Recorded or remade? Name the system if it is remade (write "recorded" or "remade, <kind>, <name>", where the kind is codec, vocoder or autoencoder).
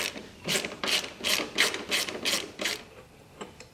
remade, vocoder, BigVGAN v2